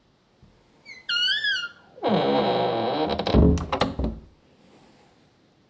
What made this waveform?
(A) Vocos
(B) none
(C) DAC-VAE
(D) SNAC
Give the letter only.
B